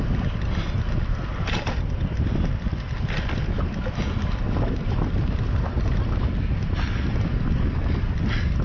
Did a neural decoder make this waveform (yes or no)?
no